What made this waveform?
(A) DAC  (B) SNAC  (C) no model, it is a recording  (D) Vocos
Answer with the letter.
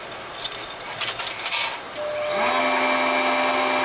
C